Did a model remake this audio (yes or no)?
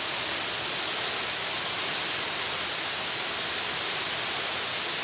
no